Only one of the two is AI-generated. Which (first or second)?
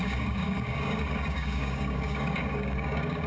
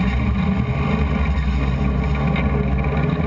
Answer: first